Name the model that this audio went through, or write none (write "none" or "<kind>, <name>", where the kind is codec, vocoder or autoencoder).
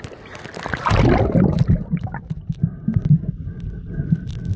none